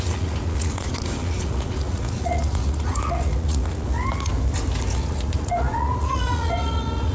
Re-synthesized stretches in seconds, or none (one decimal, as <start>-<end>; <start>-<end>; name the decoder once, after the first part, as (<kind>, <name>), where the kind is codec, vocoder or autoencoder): 0.0-4.3 (vocoder, Vocos); 4.9-7.1